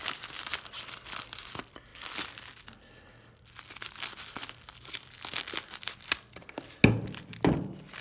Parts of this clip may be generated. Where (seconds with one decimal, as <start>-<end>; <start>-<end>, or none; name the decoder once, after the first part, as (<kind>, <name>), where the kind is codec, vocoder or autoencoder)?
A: none